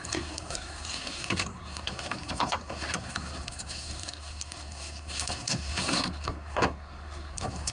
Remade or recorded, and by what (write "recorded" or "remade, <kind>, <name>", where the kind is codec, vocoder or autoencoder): remade, codec, SNAC